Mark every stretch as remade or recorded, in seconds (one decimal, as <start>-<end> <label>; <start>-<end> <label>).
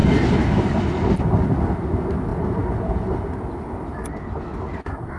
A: 0.0-5.2 recorded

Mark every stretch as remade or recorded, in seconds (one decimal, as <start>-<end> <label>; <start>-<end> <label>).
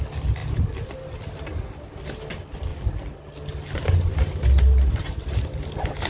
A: 0.0-6.1 recorded